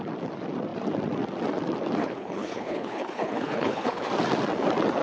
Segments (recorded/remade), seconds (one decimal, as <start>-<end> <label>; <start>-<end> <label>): 0.0-2.0 recorded; 2.0-4.1 remade; 4.1-5.0 recorded